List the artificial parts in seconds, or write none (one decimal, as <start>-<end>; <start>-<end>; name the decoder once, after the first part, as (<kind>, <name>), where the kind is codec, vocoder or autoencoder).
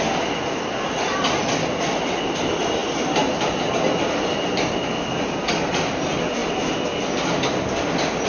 none